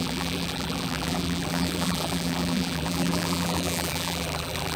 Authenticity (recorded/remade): remade